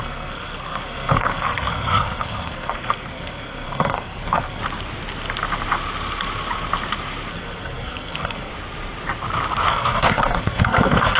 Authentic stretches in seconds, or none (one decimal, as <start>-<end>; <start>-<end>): 4.6-7.3; 8.5-9.7